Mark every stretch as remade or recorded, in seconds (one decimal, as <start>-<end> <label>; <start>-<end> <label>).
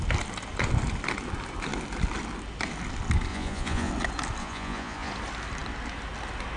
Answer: 0.0-3.3 recorded; 3.3-3.9 remade; 3.9-4.4 recorded; 4.4-5.1 remade; 5.1-6.6 recorded